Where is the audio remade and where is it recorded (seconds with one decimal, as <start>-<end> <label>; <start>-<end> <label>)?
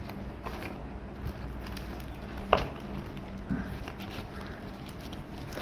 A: 0.0-5.6 recorded